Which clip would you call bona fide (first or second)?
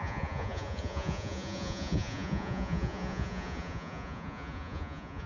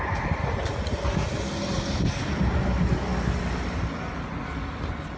second